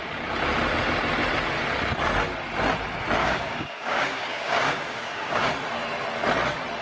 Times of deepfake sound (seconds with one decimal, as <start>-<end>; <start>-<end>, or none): 3.2-5.5